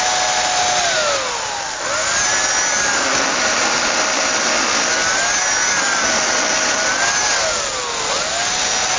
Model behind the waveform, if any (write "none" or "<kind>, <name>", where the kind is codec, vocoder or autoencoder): none